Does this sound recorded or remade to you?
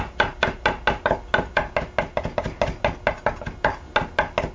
recorded